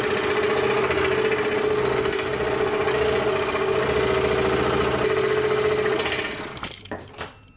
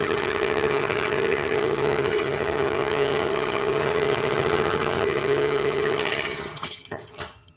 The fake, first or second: second